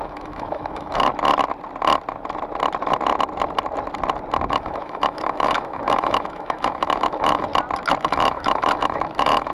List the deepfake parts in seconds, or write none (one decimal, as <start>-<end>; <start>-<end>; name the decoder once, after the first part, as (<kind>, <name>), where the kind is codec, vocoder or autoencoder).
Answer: 0.0-1.1 (autoencoder, DAC-VAE); 4.5-7.5; 8.0-9.5